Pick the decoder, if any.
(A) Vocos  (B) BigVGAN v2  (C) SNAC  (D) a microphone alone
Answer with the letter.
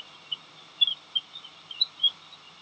D